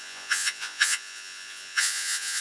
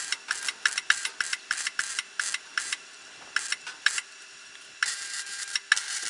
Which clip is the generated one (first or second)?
first